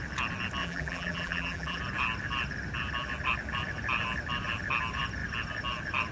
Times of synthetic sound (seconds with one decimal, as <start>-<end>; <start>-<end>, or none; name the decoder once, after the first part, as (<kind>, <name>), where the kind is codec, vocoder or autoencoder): 0.6-1.8 (vocoder, BigVGAN v2)